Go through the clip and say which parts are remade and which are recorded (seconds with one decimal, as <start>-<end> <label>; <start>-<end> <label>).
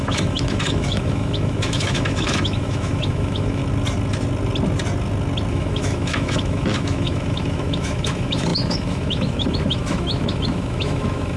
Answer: 0.0-3.6 remade; 3.6-5.5 recorded; 5.5-11.4 remade